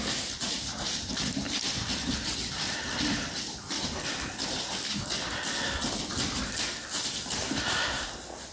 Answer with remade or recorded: remade